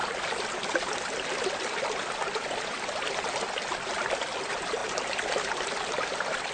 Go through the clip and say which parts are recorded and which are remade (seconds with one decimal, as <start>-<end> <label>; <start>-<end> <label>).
0.0-1.5 recorded; 1.5-2.4 remade; 2.4-4.2 recorded; 4.2-4.8 remade; 4.8-5.6 recorded; 5.6-6.5 remade